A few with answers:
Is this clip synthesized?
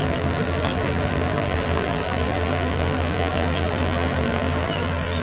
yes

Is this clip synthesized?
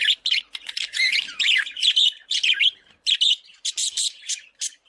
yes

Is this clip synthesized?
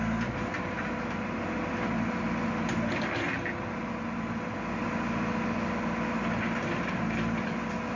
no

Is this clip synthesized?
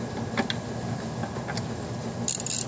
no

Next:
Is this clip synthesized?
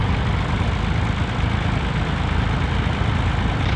no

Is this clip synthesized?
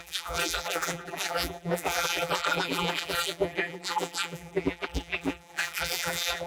yes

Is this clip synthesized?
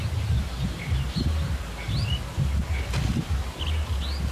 no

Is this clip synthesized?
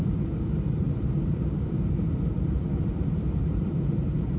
yes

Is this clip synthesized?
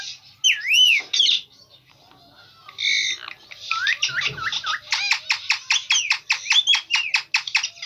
no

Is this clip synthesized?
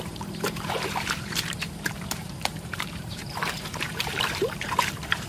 yes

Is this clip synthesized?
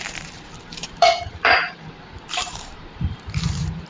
yes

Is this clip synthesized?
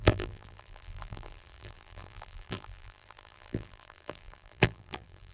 yes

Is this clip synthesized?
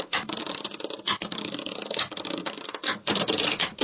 yes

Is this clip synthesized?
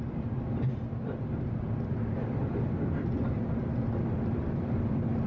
yes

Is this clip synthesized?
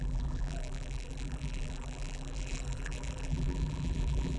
yes